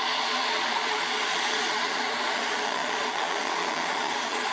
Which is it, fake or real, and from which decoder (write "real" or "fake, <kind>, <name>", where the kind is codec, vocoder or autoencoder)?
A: fake, vocoder, Vocos